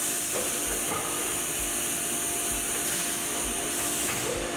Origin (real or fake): real